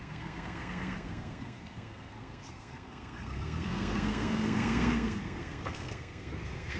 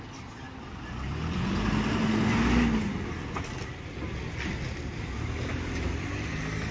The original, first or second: second